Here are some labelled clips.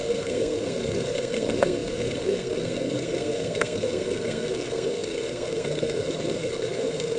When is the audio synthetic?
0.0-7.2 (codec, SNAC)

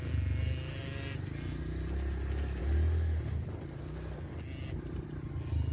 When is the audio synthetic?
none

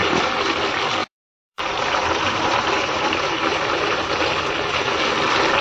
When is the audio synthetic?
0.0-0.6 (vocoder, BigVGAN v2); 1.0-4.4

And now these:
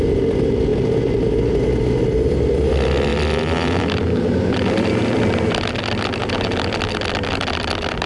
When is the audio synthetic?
3.1-5.3 (vocoder, BigVGAN v2)